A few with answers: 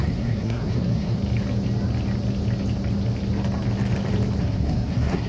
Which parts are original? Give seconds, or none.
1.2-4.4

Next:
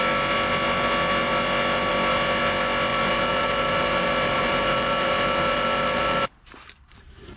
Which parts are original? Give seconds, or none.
0.0-2.9

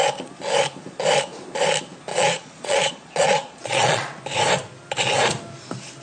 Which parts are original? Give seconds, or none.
0.0-2.1; 4.2-6.0

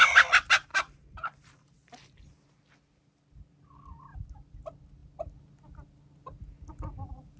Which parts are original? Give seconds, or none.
0.0-0.7; 2.2-7.4

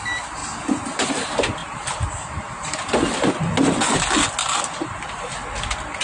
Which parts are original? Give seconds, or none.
0.0-0.4; 1.1-1.6; 2.7-4.4; 5.4-6.0

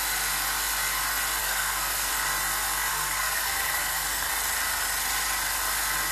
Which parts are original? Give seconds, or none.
0.0-1.4; 2.1-2.9; 4.3-6.1